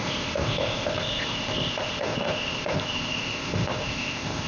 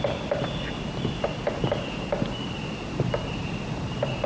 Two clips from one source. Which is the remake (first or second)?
first